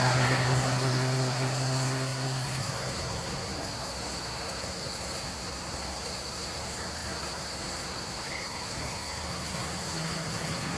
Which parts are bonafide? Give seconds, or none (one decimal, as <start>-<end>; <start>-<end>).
none